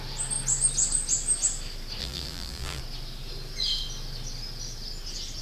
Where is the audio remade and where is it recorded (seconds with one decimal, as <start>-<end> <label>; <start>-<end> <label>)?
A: 0.0-2.0 recorded; 2.0-2.8 remade; 2.8-5.4 recorded